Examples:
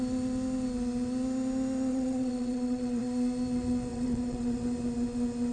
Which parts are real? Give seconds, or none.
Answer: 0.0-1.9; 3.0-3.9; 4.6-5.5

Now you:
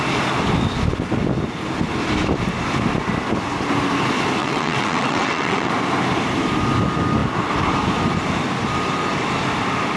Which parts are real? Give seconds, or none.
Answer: 0.0-4.4; 5.7-10.0

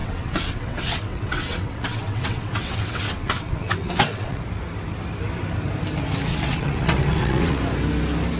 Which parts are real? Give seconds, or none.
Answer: 4.4-6.3; 7.6-8.4

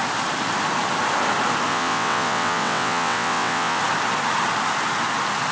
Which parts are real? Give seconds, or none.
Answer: 0.0-1.7; 3.8-5.5

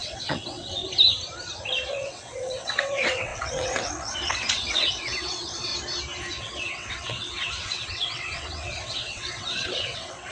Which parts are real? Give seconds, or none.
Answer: 0.8-1.9; 5.7-6.4

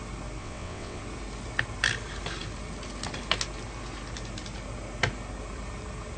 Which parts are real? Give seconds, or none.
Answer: 0.0-0.4; 1.0-6.2

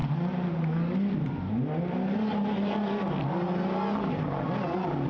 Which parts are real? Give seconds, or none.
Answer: 0.0-5.1